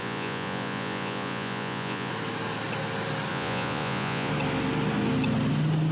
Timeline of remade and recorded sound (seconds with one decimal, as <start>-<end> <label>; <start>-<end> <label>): 0.0-2.1 remade; 2.1-3.3 recorded; 3.3-4.3 remade; 4.3-5.9 recorded